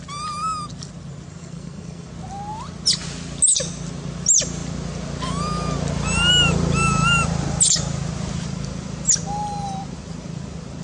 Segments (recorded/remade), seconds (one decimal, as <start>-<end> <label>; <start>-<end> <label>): 0.0-1.3 recorded; 1.3-2.1 remade; 2.1-10.8 recorded

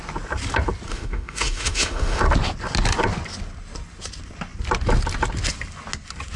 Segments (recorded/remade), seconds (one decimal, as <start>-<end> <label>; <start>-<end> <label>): 0.0-0.9 recorded; 0.9-2.2 remade; 2.2-6.4 recorded

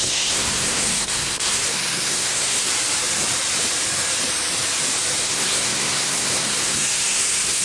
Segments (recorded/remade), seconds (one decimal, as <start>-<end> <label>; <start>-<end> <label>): 0.0-2.7 remade; 2.7-5.2 recorded; 5.2-7.6 remade

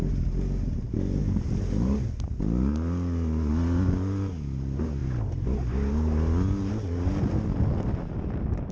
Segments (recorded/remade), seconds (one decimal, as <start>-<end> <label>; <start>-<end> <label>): 0.0-8.7 recorded

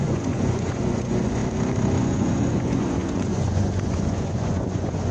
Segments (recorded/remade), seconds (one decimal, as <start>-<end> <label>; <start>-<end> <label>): 0.0-1.4 remade; 1.4-2.0 recorded; 2.0-5.1 remade

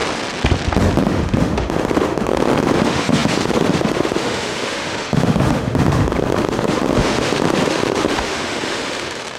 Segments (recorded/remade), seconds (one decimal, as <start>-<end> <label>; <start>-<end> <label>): 0.0-1.0 recorded; 1.0-9.4 remade

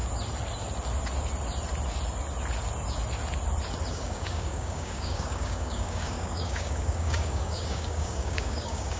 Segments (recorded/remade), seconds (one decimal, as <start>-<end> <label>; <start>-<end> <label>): 0.0-3.9 recorded; 3.9-9.0 remade